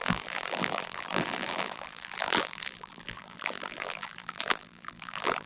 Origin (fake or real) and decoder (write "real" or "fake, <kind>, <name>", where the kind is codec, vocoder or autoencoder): fake, vocoder, BigVGAN v2